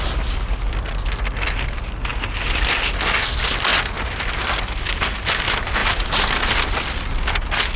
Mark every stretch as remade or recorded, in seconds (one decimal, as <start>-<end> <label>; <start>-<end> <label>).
0.0-7.8 recorded